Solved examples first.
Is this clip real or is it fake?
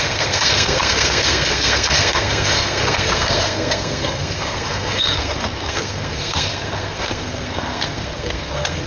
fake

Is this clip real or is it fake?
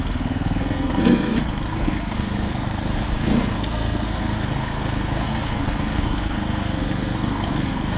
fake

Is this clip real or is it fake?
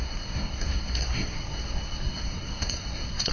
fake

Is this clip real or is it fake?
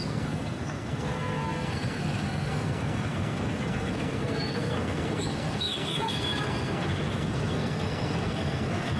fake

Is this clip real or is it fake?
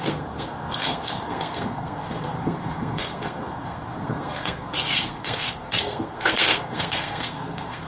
fake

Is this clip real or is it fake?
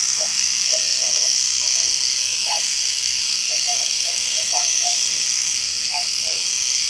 fake